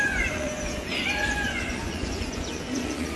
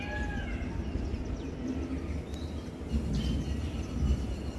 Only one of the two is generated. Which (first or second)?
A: first